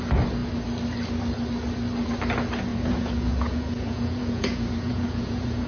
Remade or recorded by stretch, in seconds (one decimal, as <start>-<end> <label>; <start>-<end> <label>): 0.0-2.7 recorded; 2.7-5.7 remade